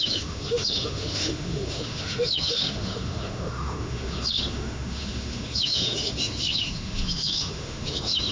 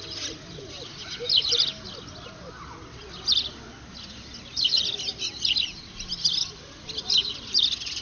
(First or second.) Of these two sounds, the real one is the second